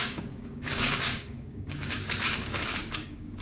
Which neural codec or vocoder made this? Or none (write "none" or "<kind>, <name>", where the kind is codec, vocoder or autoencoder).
codec, DAC